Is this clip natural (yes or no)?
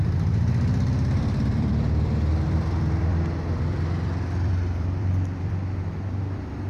no